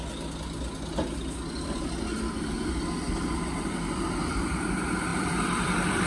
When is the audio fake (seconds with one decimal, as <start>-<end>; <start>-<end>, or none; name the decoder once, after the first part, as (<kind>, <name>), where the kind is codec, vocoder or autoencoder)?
5.1-6.1 (vocoder, BigVGAN v2)